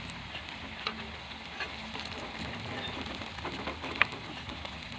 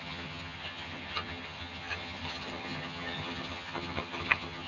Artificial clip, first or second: second